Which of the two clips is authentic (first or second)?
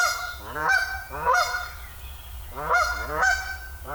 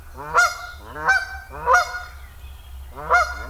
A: second